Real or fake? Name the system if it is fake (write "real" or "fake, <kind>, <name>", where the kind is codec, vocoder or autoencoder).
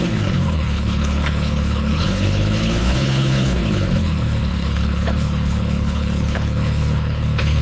fake, codec, HILCodec